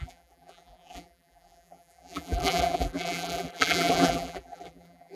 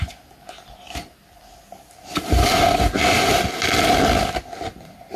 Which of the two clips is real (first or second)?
second